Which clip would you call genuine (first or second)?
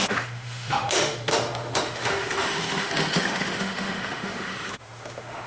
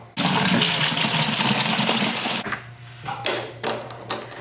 second